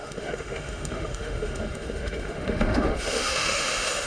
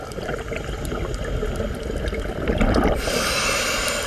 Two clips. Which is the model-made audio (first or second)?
first